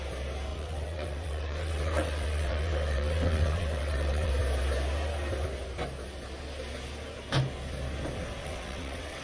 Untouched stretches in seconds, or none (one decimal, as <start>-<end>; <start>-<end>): 0.0-0.5; 4.3-8.4